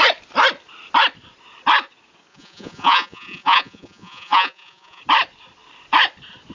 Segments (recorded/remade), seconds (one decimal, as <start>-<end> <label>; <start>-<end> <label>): 0.0-2.3 recorded; 2.3-5.0 remade; 5.0-6.5 recorded